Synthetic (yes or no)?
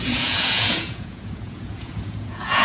yes